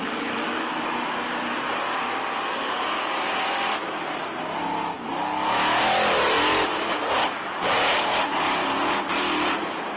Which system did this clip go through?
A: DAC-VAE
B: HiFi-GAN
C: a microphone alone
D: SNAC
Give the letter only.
C